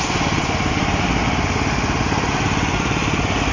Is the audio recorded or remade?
recorded